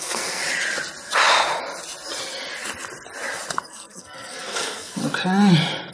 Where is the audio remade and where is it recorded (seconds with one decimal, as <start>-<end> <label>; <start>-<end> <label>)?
0.0-0.4 remade; 0.4-3.6 recorded; 3.6-5.0 remade; 5.0-5.9 recorded